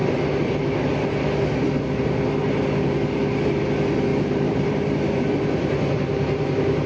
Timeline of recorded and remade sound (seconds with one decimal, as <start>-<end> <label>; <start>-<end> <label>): 0.0-0.5 remade; 0.5-4.1 recorded; 4.1-6.9 remade